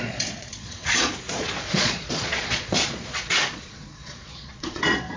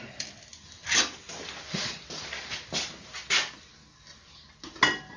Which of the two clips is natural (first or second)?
second